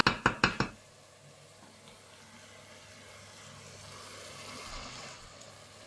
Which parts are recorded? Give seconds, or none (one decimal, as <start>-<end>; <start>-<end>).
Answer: 0.0-4.7; 5.5-5.9